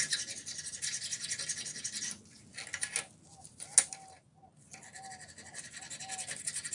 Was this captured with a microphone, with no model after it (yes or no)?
yes